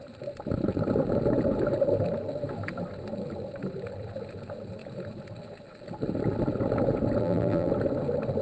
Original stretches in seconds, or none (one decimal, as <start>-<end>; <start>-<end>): 0.0-7.2; 7.7-8.4

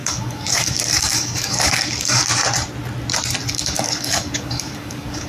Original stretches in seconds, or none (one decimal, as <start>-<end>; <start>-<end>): 2.2-3.5

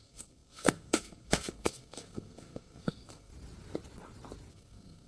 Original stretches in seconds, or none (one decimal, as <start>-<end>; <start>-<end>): 3.3-4.5

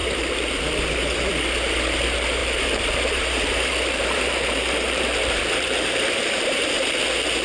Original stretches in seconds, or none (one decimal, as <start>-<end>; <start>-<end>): 1.3-2.4; 6.8-7.4

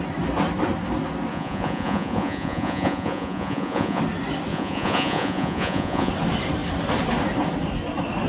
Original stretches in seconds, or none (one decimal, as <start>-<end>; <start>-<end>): 0.0-1.3; 4.0-4.5; 6.1-8.3

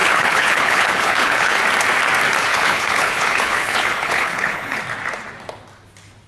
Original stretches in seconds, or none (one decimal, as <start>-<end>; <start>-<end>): 1.6-2.5; 4.8-6.3

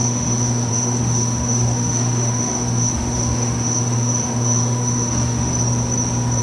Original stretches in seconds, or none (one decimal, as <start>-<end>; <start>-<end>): 5.5-6.4

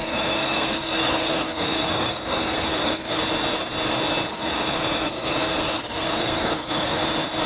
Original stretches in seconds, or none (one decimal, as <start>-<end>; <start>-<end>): 3.2-4.3; 7.0-7.5